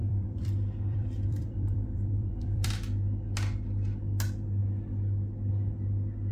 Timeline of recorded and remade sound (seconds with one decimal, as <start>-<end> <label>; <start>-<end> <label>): 0.0-2.7 remade; 2.7-6.3 recorded